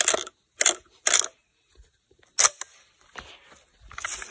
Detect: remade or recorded recorded